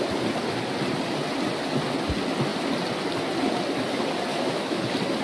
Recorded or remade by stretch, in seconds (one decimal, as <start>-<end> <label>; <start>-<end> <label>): 0.0-4.3 recorded; 4.3-4.8 remade; 4.8-5.2 recorded